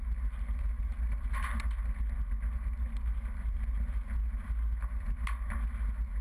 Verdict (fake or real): real